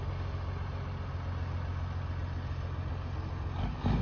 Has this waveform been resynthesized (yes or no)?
no